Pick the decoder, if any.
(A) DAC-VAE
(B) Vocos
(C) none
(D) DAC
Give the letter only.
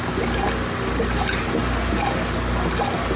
C